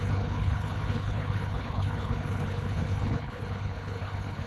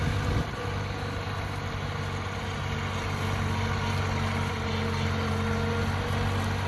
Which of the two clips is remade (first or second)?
first